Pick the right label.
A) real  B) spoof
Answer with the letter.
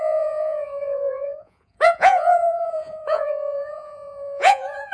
B